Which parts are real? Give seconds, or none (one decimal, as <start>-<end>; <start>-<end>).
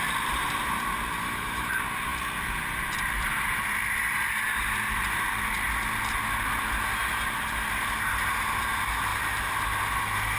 0.0-1.2; 1.7-10.4